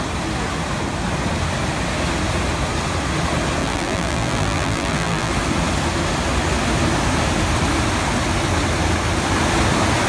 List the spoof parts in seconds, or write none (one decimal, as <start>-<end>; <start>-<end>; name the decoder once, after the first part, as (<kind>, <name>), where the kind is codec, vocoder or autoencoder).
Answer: 3.6-5.3 (vocoder, BigVGAN v2)